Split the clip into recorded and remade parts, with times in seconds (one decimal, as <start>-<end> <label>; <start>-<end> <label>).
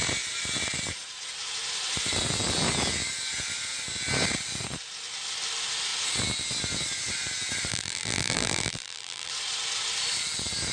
0.0-7.7 recorded; 7.7-9.3 remade; 9.3-10.7 recorded